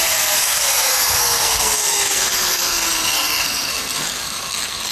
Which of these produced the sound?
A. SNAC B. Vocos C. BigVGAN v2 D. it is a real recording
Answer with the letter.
A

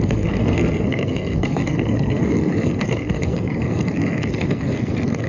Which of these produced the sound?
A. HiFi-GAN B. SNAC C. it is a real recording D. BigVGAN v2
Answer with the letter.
B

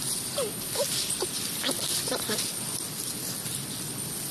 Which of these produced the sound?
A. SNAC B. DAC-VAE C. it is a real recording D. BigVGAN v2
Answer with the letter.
C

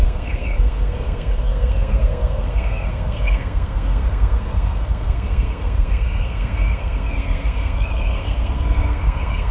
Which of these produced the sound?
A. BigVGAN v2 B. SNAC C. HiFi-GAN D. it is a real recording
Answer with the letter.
B